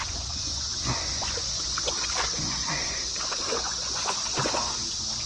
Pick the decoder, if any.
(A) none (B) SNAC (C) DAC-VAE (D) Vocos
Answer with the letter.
D